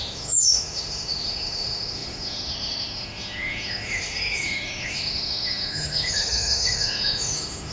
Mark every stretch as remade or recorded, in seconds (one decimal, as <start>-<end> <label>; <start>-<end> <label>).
0.0-7.7 remade